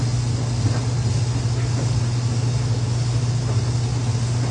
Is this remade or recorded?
recorded